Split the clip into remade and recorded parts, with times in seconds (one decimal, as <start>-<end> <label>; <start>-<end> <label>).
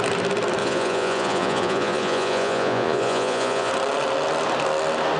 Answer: 0.0-0.6 recorded; 0.6-3.7 remade; 3.7-5.2 recorded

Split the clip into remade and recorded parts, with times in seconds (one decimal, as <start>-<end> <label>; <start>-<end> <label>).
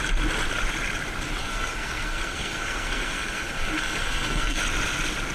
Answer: 0.0-1.4 recorded; 1.4-4.6 remade; 4.6-5.3 recorded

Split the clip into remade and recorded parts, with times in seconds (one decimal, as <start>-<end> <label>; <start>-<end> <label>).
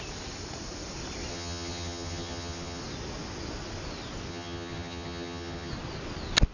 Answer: 0.0-1.3 recorded; 1.3-2.8 remade; 2.8-4.3 recorded; 4.3-5.7 remade; 5.7-6.5 recorded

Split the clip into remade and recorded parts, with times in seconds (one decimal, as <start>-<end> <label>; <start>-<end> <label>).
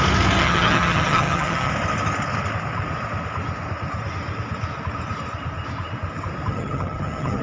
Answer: 0.0-0.4 recorded; 0.4-1.7 remade; 1.7-6.5 recorded; 6.5-7.4 remade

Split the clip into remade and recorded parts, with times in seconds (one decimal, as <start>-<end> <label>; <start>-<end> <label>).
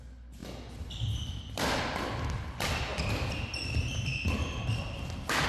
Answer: 0.0-5.5 recorded